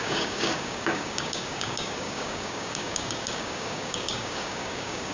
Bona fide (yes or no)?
no